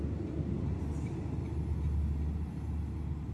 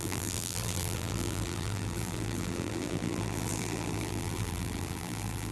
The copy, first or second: second